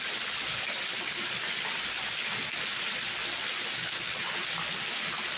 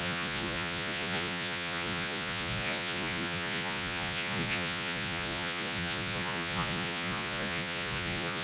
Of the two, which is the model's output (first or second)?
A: second